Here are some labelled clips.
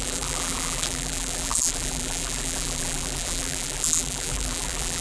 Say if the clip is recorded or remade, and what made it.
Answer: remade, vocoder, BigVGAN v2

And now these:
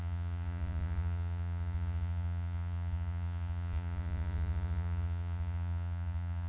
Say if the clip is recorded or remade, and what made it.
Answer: remade, vocoder, Vocos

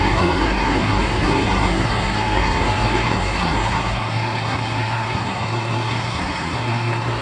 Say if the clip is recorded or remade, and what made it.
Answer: remade, codec, SNAC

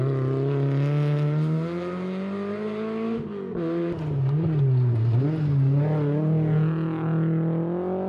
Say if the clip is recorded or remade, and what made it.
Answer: recorded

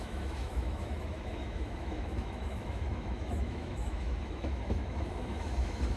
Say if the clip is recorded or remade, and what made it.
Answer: remade, autoencoder, DAC-VAE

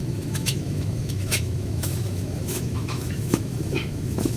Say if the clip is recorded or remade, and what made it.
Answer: remade, autoencoder, DAC-VAE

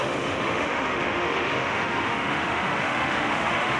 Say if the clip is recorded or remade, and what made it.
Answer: remade, autoencoder, DAC-VAE